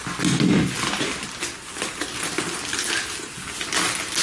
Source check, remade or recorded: recorded